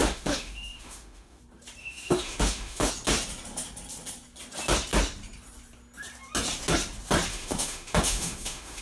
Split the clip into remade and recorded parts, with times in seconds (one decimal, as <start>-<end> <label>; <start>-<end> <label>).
0.0-1.4 remade; 1.4-1.8 recorded; 1.8-2.9 remade; 2.9-7.3 recorded; 7.3-8.8 remade